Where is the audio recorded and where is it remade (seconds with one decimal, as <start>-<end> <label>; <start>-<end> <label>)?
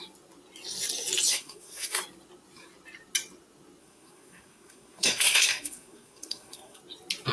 0.0-1.3 recorded; 1.3-2.0 remade; 2.0-3.8 recorded; 3.8-6.8 remade; 6.8-7.3 recorded